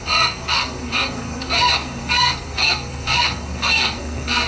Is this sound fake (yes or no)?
yes